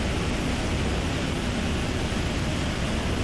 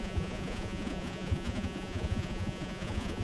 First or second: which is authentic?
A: first